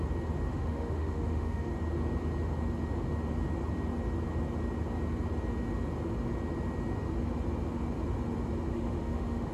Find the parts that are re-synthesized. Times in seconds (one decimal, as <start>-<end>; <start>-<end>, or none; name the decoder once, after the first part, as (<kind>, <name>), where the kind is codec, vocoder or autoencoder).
0.5-1.7 (autoencoder, DAC-VAE); 8.7-9.5